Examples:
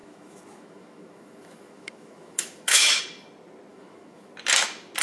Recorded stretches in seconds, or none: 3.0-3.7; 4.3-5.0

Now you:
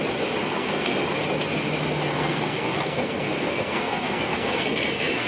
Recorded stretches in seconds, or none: 0.0-0.4; 1.0-2.1

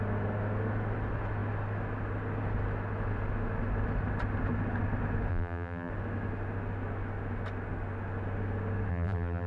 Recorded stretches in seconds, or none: 0.0-5.3; 5.9-8.9

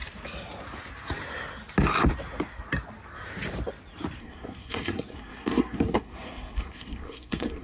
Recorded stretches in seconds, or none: 0.0-4.2